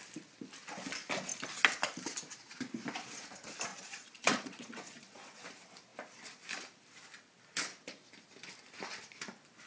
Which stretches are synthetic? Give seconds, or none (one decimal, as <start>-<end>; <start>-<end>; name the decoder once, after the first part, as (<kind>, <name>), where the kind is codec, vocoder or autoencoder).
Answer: 3.7-5.4 (vocoder, Vocos)